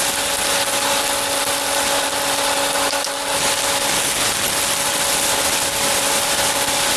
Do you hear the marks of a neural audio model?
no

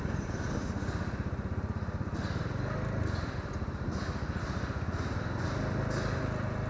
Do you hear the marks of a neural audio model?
no